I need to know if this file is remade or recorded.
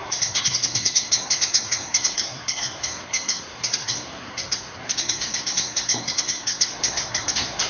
remade